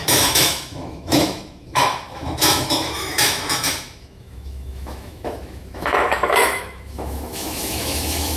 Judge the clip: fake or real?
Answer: fake